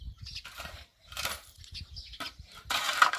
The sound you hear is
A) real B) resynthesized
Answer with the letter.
B